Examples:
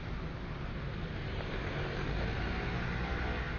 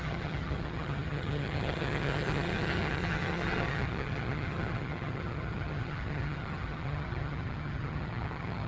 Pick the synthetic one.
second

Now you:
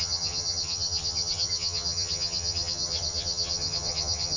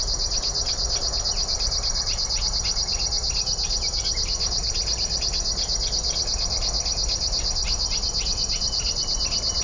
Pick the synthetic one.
first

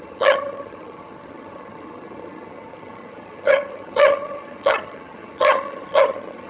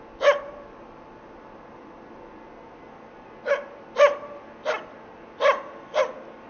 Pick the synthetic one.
first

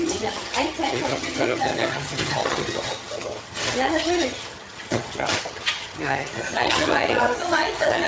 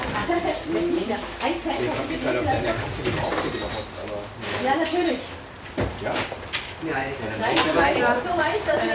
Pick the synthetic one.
first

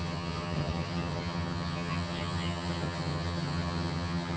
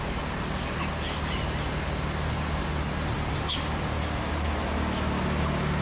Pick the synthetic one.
first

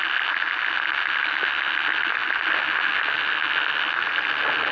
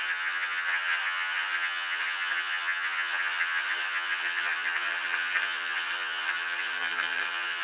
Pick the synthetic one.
second